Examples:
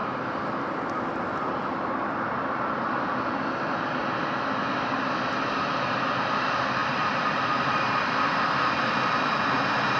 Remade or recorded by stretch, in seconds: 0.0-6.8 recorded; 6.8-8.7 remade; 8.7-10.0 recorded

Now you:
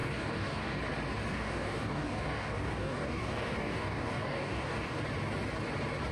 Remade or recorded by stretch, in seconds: 0.0-0.8 remade; 0.8-1.3 recorded; 1.3-5.0 remade; 5.0-6.1 recorded

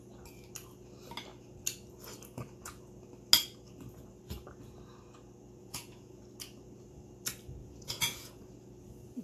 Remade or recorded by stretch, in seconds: 0.0-5.6 recorded; 5.6-6.2 remade; 6.2-7.6 recorded; 7.6-8.5 remade; 8.5-9.2 recorded

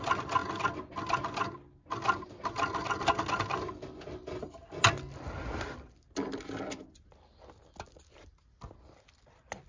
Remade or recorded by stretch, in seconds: 0.0-9.7 recorded

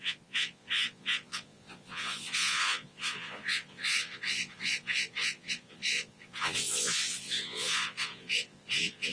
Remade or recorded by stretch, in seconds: 0.0-9.1 remade

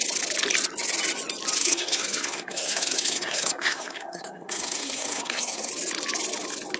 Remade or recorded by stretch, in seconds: 0.0-1.6 recorded; 1.6-5.7 remade; 5.7-6.8 recorded